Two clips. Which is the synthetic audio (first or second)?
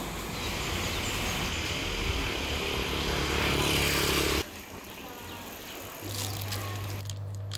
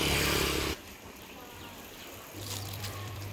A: second